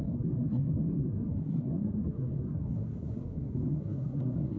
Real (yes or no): no